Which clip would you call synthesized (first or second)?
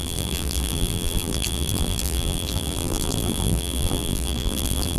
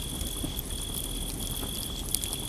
first